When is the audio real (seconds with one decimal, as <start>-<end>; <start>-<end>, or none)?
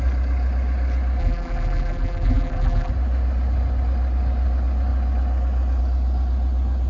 0.0-1.2; 2.9-6.9